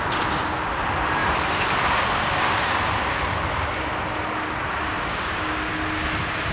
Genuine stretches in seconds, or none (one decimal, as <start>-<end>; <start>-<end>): 0.0-5.1; 5.7-6.5